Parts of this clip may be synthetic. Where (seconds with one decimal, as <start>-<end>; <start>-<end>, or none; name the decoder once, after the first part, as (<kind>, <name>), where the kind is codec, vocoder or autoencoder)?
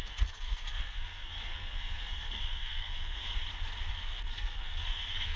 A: 0.0-3.3 (codec, SNAC); 3.9-5.4